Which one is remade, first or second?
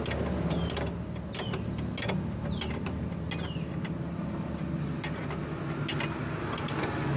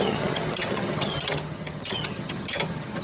second